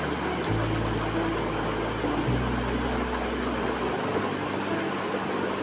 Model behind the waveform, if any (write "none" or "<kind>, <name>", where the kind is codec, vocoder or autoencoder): none